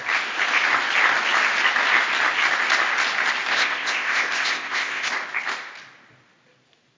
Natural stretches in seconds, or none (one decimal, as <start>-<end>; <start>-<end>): 0.0-3.5; 5.1-7.0